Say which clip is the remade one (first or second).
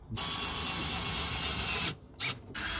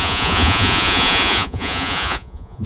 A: second